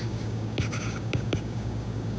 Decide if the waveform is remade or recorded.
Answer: remade